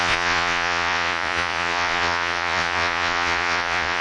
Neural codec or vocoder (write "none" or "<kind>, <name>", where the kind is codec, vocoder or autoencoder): vocoder, Vocos